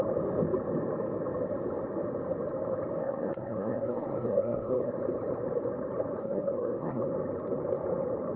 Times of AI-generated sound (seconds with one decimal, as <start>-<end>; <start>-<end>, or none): 3.0-4.9; 6.2-7.1